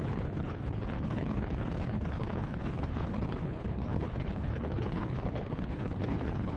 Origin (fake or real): fake